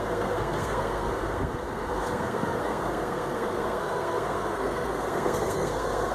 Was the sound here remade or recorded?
remade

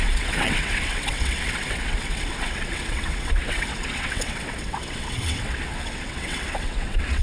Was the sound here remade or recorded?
remade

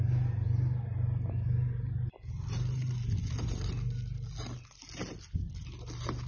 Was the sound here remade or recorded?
recorded